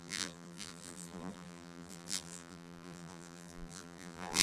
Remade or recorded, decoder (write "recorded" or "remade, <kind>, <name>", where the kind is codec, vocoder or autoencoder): remade, vocoder, BigVGAN v2